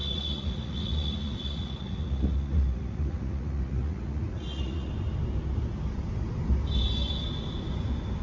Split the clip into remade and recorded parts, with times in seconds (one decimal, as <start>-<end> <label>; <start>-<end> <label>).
0.0-4.9 remade; 4.9-8.2 recorded